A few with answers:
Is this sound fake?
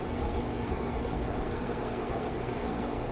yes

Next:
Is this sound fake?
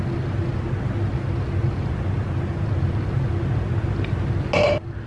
no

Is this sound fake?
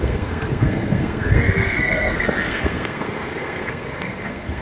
yes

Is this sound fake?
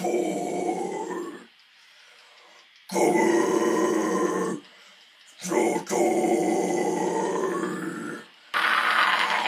no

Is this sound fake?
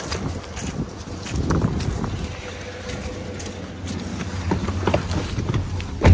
no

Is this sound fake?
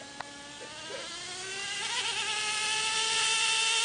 no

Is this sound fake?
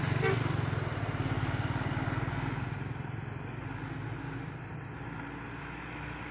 no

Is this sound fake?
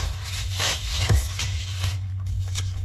yes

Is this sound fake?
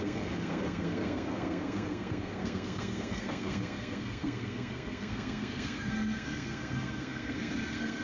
yes